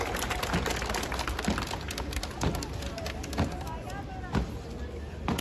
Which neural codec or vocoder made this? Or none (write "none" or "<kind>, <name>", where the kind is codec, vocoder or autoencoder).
none